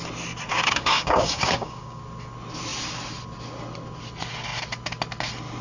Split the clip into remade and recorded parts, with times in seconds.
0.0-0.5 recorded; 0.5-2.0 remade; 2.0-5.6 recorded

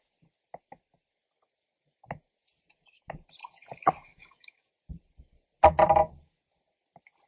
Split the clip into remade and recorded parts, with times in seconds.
0.0-3.4 recorded; 3.4-4.7 remade; 4.7-7.3 recorded